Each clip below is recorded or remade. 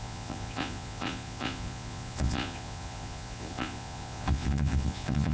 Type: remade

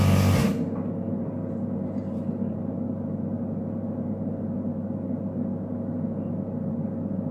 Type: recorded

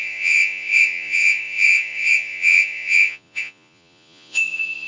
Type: remade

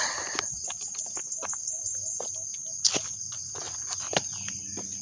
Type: recorded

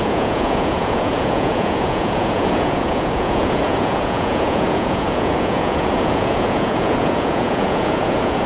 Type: remade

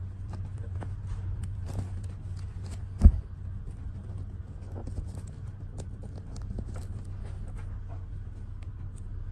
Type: recorded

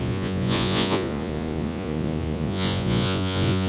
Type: remade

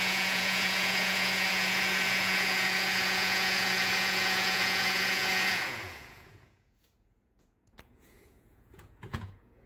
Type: remade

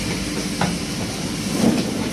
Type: recorded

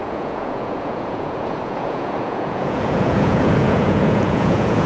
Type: remade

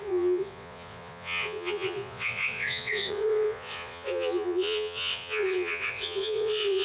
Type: remade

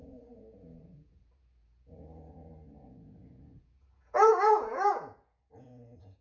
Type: remade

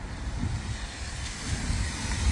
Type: recorded